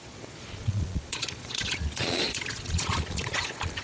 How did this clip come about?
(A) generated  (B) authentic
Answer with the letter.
A